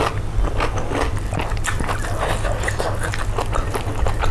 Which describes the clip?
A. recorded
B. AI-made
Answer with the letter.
A